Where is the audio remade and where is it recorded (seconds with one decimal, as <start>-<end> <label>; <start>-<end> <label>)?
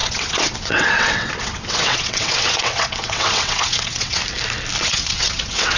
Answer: 0.0-4.2 remade; 4.2-4.8 recorded; 4.8-5.8 remade